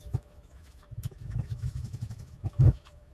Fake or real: fake